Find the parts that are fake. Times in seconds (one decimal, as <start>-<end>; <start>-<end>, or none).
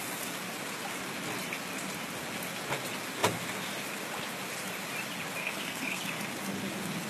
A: 5.4-6.0